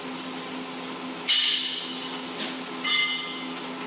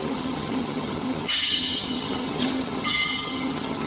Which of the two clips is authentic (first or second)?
first